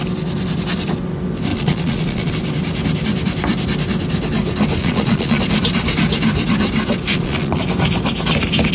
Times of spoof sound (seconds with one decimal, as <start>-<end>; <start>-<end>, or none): 1.5-2.3; 4.8-5.4; 7.1-7.6